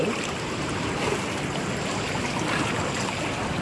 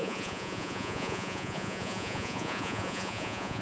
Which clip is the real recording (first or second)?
first